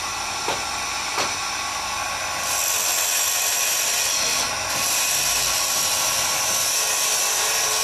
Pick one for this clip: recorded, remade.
recorded